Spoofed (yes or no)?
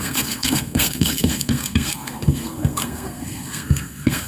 yes